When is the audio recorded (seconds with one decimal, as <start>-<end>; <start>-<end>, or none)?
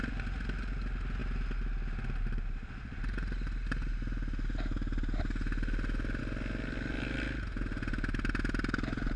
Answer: 0.0-9.2